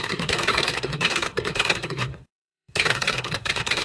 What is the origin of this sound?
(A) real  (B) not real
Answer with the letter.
B